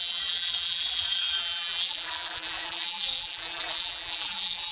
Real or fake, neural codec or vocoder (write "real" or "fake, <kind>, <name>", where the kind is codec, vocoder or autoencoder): fake, vocoder, BigVGAN v2